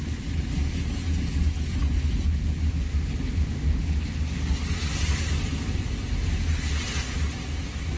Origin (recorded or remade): recorded